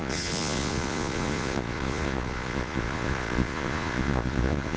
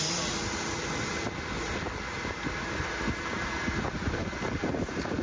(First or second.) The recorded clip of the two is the second